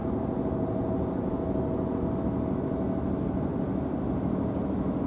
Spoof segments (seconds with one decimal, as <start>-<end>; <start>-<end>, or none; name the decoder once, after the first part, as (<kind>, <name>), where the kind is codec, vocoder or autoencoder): 3.5-5.1 (vocoder, BigVGAN v2)